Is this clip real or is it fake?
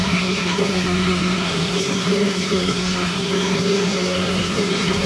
fake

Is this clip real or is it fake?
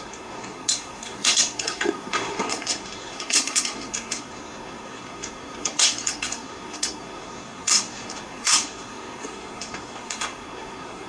fake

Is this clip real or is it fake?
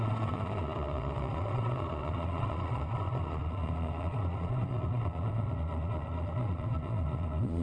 fake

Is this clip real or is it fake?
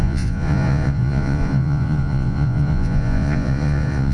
fake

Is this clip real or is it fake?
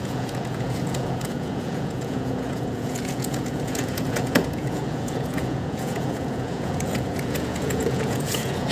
fake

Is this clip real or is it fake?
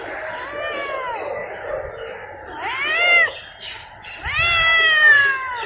real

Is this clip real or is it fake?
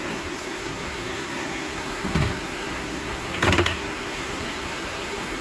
fake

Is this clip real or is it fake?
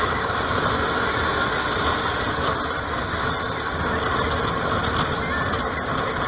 real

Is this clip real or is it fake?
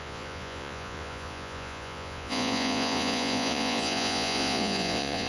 fake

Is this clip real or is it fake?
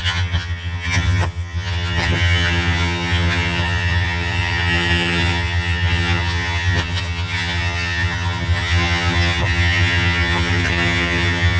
fake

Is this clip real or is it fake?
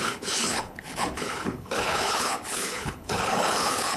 fake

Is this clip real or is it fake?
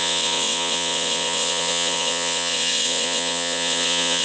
fake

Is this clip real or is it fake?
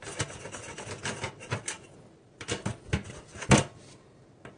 real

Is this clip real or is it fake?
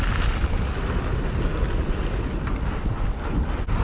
real